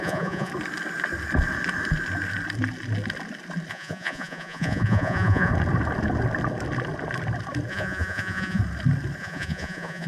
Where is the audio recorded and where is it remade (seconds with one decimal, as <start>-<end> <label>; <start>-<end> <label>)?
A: 0.0-0.5 remade; 0.5-3.7 recorded; 3.7-5.5 remade; 5.5-7.7 recorded; 7.7-8.6 remade; 8.6-9.2 recorded; 9.2-10.1 remade